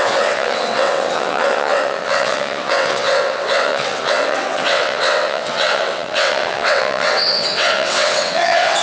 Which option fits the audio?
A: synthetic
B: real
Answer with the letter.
A